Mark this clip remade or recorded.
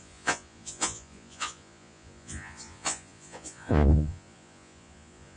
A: remade